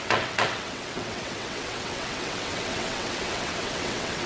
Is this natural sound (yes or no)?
no